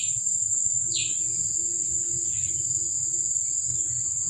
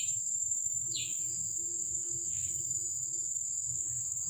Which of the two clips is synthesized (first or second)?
second